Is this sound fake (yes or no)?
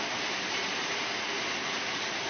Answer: no